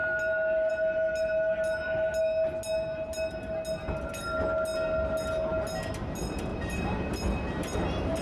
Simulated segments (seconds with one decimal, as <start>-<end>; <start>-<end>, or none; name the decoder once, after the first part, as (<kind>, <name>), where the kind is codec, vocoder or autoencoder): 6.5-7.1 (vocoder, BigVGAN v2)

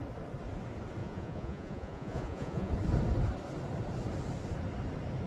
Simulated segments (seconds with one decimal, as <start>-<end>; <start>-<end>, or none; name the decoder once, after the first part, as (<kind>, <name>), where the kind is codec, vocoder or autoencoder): 1.0-2.7 (vocoder, Vocos)

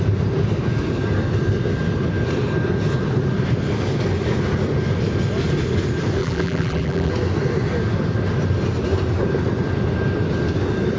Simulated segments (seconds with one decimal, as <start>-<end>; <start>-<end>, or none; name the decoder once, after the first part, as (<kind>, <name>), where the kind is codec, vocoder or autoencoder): 6.2-7.1 (vocoder, BigVGAN v2)

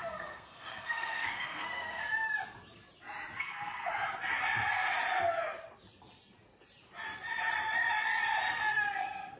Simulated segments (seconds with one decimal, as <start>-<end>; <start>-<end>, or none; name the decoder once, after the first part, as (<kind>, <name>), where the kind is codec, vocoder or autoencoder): 0.0-2.0 (codec, SNAC); 3.4-3.9; 8.7-9.4

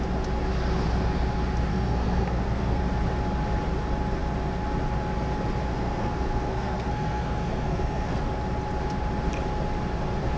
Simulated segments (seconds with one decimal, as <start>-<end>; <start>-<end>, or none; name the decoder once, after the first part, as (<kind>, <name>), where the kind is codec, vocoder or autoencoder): 1.7-2.8 (codec, SNAC); 5.7-8.2

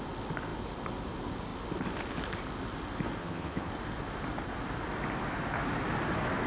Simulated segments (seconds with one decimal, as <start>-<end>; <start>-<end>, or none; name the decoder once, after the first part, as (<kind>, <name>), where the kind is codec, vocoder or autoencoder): 3.2-3.7 (vocoder, HiFi-GAN)